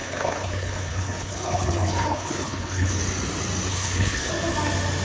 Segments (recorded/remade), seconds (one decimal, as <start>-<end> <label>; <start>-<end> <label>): 0.0-3.0 remade; 3.0-3.7 recorded; 3.7-4.3 remade; 4.3-5.0 recorded